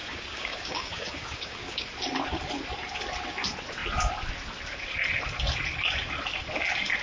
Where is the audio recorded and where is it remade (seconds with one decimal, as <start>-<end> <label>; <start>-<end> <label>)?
0.0-1.9 remade; 1.9-7.0 recorded